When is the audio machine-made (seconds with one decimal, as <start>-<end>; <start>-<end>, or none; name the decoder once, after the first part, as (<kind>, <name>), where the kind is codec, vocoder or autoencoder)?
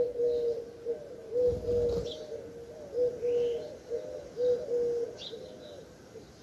none